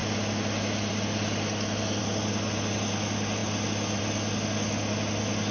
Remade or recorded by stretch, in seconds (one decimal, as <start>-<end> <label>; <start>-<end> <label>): 0.0-5.5 recorded